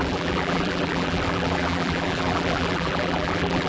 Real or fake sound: fake